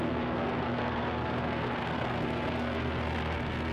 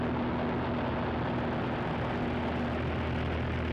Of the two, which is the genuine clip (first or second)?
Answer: second